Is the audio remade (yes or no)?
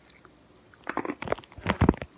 no